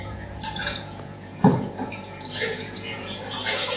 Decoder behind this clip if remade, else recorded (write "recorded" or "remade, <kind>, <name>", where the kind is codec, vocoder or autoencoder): remade, vocoder, Vocos